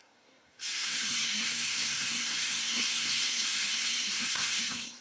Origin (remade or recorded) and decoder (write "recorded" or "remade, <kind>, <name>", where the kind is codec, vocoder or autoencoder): remade, codec, SNAC